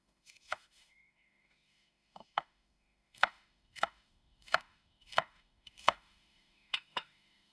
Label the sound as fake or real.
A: fake